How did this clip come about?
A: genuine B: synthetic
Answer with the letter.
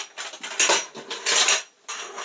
A